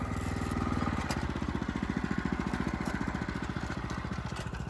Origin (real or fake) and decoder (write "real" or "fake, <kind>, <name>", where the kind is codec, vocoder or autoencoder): real